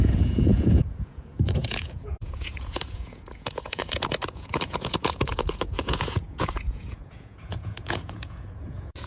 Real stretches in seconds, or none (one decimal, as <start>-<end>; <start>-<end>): none